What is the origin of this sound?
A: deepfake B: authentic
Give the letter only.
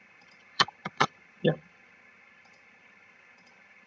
A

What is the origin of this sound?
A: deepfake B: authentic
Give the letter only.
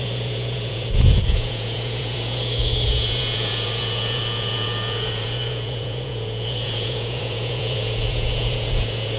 A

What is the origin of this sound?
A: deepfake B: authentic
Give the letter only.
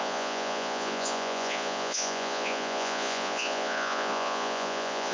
A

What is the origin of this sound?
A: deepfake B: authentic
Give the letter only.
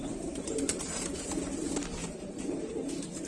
A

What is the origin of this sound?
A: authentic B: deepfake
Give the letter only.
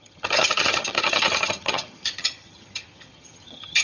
B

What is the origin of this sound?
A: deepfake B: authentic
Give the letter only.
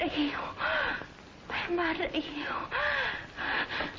B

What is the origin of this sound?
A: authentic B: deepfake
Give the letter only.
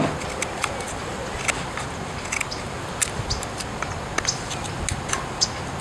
A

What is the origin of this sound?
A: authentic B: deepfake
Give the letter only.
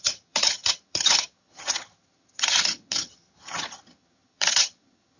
B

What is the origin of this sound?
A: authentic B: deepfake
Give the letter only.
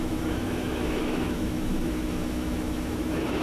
B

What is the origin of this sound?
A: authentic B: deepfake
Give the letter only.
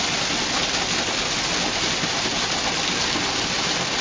A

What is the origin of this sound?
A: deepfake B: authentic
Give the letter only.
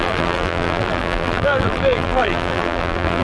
A